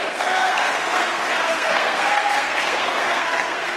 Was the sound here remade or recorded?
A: remade